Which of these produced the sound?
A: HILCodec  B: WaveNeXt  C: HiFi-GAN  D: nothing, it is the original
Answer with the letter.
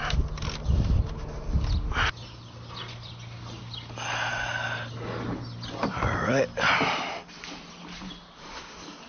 D